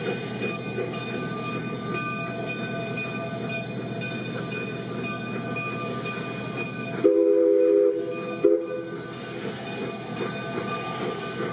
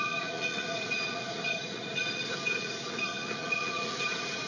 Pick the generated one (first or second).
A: second